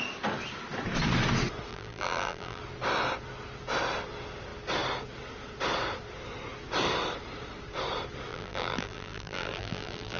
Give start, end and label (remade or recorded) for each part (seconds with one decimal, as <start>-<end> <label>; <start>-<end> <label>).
0.0-1.7 recorded; 1.7-2.6 remade; 2.6-8.3 recorded; 8.3-10.2 remade